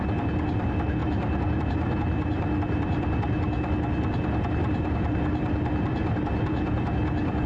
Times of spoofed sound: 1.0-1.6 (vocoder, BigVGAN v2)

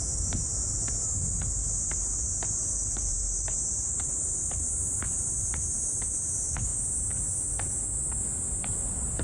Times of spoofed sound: 2.7-5.6 (vocoder, BigVGAN v2); 6.7-7.4

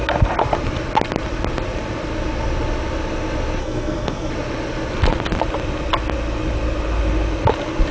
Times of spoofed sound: 3.6-4.3 (codec, SNAC)